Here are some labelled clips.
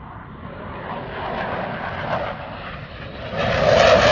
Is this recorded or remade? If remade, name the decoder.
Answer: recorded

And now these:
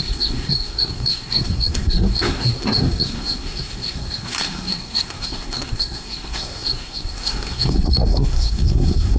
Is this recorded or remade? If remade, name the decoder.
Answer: remade, codec, SNAC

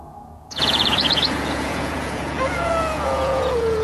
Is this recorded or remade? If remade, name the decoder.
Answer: remade, vocoder, Vocos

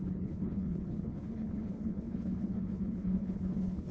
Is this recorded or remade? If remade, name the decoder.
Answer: remade, codec, HILCodec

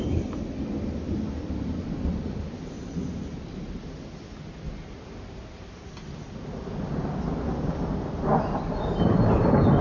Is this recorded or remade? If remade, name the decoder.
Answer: recorded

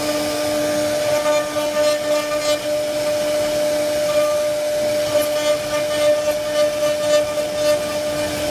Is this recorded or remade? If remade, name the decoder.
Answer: recorded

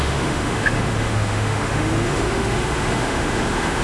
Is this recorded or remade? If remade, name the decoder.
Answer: remade, autoencoder, DAC-VAE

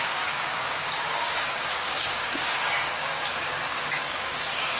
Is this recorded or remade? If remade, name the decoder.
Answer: remade, codec, DAC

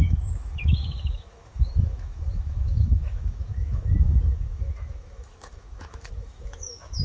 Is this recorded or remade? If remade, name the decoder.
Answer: remade, autoencoder, DAC-VAE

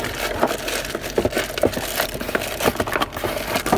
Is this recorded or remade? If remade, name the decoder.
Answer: recorded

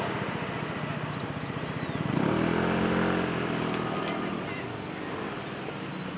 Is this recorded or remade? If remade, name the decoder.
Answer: recorded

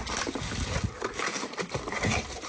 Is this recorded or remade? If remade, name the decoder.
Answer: remade, vocoder, BigVGAN v2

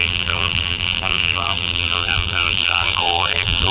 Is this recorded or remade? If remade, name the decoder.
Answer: remade, vocoder, BigVGAN v2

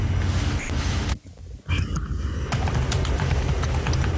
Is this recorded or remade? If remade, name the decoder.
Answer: recorded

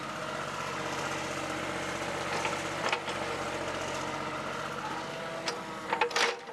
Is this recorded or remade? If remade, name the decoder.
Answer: recorded